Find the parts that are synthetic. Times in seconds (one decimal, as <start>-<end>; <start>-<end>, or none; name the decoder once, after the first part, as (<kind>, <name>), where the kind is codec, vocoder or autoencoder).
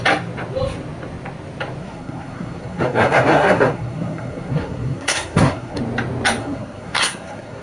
1.8-5.8 (codec, SNAC); 6.4-7.6